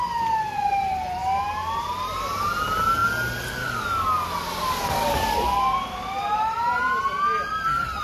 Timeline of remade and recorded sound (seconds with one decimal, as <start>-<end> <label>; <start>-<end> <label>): 0.0-8.0 recorded